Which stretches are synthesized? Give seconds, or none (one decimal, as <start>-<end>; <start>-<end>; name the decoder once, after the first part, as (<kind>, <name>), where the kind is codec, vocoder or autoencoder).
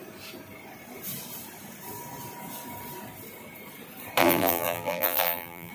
4.2-5.7 (vocoder, BigVGAN v2)